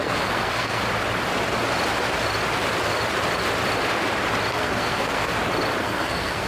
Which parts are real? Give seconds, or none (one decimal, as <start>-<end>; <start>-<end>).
0.8-4.5; 5.3-5.8